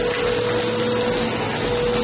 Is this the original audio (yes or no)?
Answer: yes